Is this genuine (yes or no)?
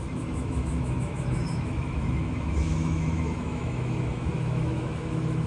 no